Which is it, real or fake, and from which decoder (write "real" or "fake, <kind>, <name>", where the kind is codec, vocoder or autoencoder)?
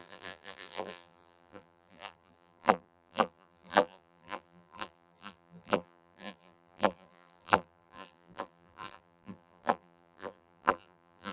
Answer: fake, vocoder, BigVGAN v2